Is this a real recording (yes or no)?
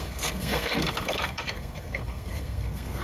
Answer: no